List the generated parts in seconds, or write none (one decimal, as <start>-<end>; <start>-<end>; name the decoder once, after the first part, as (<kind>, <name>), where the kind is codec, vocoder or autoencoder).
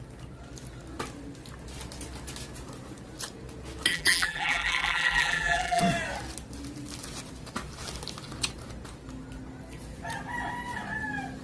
3.9-5.8 (vocoder, BigVGAN v2)